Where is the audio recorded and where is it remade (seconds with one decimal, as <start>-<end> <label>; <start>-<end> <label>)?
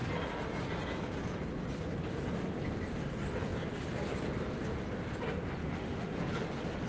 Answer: 0.0-5.6 recorded; 5.6-6.2 remade; 6.2-6.9 recorded